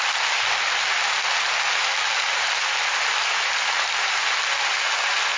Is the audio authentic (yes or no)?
yes